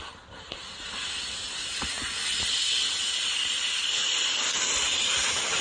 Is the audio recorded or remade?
recorded